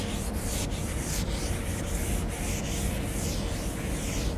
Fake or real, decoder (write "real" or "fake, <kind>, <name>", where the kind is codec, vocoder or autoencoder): real